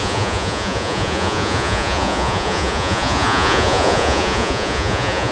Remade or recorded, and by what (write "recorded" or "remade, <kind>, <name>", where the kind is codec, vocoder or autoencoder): remade, vocoder, Vocos